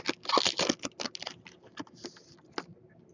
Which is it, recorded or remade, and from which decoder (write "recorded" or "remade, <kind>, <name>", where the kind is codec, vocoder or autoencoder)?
recorded